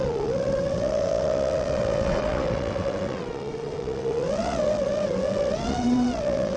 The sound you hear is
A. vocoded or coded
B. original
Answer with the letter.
A